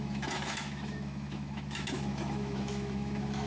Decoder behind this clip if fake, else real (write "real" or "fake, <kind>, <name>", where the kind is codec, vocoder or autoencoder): fake, autoencoder, DAC-VAE